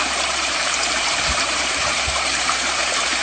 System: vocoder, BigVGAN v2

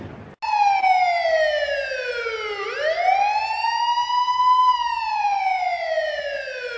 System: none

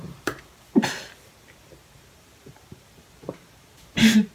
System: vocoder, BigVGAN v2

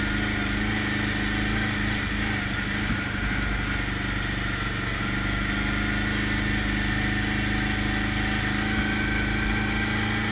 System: none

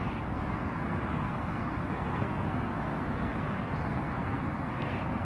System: codec, SNAC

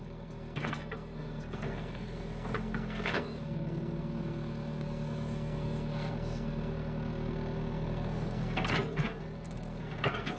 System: codec, SNAC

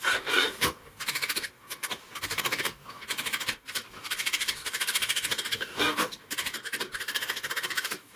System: codec, DAC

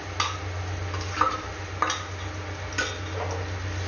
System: none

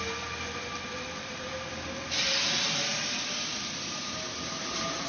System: none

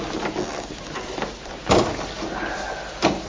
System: none